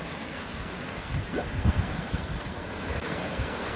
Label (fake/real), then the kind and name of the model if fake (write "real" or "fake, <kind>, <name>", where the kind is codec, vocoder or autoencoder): fake, codec, SNAC